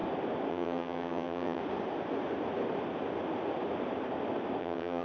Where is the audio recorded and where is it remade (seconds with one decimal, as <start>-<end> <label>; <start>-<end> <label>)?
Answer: 0.0-0.5 recorded; 0.5-1.6 remade; 1.6-4.6 recorded; 4.6-5.0 remade